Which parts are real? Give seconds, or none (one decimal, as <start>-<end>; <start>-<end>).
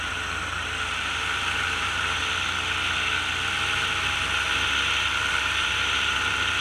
2.2-5.3